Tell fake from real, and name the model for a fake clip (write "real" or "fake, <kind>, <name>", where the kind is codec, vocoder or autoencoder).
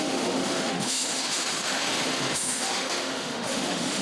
fake, autoencoder, DAC-VAE